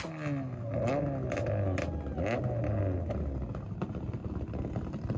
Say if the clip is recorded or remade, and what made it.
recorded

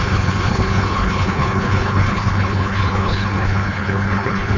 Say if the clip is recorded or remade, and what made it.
remade, codec, HILCodec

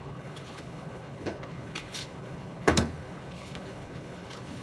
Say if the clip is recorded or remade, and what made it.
remade, codec, HILCodec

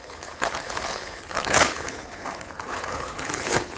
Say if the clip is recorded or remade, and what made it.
remade, codec, HILCodec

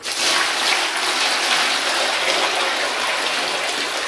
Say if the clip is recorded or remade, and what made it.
recorded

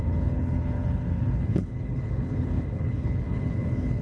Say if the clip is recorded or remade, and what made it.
remade, codec, HILCodec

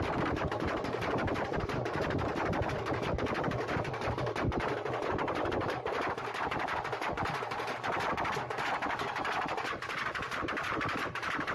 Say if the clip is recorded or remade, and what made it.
recorded